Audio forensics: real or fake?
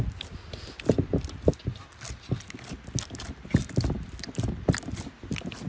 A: real